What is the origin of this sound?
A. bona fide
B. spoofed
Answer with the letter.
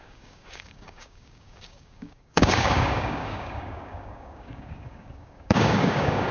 B